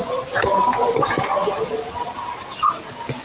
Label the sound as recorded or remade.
recorded